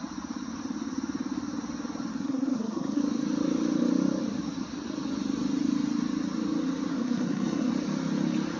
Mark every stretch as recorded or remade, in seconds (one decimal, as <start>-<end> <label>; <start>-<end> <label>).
0.0-2.1 recorded; 2.1-3.0 remade; 3.0-6.9 recorded; 6.9-7.7 remade; 7.7-8.6 recorded